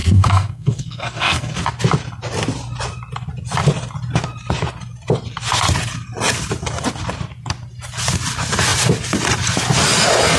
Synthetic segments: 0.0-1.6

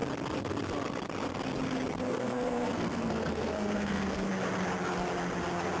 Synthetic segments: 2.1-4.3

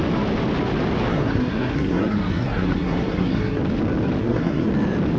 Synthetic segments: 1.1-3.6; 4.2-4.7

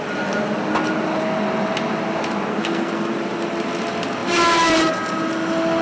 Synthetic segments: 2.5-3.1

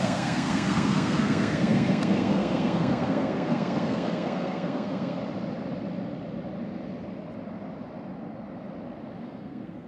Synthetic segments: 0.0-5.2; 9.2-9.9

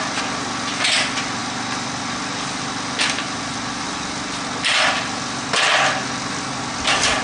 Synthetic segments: none

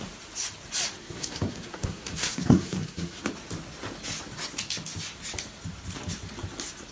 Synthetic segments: 1.0-3.2

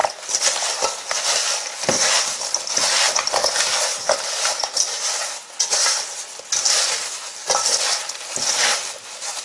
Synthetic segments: none